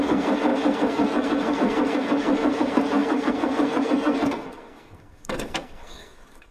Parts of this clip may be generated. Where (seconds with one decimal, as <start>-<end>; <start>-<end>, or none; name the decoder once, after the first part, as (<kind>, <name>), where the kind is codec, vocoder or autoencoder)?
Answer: 0.0-6.5 (codec, SNAC)